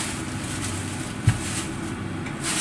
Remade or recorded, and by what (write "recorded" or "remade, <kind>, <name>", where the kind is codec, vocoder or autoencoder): recorded